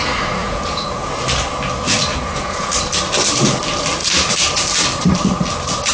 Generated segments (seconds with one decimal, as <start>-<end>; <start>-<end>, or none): 0.4-1.1; 2.1-2.7